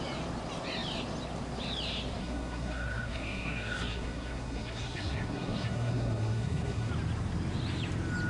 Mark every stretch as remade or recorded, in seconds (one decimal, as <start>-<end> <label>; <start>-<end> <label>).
0.0-2.2 recorded; 2.2-6.9 remade; 6.9-8.3 recorded